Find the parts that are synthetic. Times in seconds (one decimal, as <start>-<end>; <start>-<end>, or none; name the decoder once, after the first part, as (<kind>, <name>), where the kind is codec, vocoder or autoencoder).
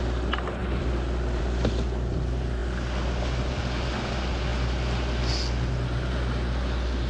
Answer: 0.6-1.4 (vocoder, BigVGAN v2)